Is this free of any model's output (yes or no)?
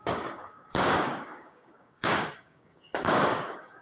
no